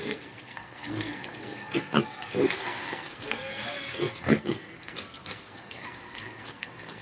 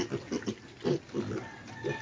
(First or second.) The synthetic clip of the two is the first